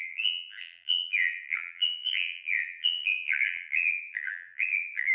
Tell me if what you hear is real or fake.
fake